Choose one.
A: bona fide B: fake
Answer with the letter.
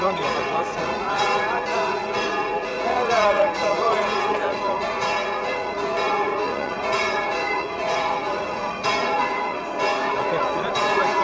B